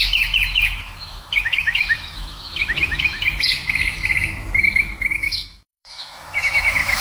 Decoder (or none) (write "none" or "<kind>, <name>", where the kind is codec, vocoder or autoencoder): autoencoder, DAC-VAE